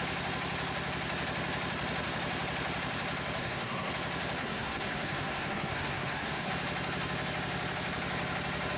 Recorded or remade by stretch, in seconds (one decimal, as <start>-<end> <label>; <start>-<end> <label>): 0.0-3.4 recorded; 3.4-3.9 remade; 3.9-4.4 recorded; 4.4-6.5 remade; 6.5-8.8 recorded